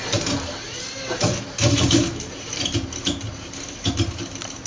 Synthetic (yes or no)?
yes